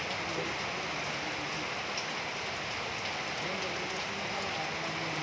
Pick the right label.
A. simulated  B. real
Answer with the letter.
B